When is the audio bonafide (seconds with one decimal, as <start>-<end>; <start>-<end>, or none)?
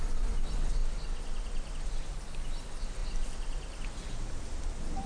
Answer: 0.0-5.1